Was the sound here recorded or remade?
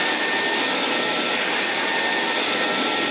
recorded